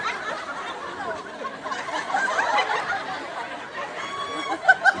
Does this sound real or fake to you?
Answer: real